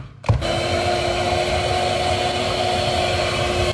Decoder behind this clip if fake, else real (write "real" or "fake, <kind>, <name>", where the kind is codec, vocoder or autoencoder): real